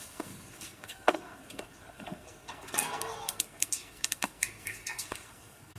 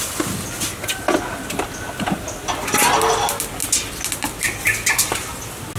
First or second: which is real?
second